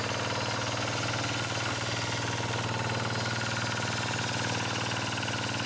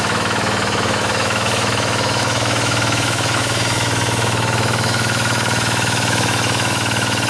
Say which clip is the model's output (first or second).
second